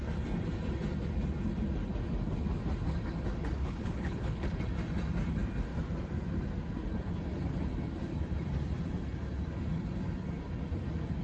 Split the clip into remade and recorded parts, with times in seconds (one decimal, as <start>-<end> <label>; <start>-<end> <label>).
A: 0.0-3.6 recorded; 3.6-4.6 remade; 4.6-11.2 recorded